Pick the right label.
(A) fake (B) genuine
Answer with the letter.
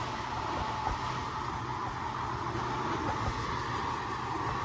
B